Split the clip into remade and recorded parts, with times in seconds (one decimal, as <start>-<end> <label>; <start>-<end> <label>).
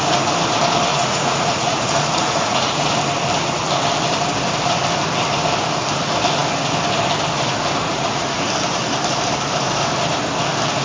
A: 0.0-0.9 recorded; 0.9-2.9 remade; 2.9-7.8 recorded; 7.8-8.3 remade; 8.3-10.8 recorded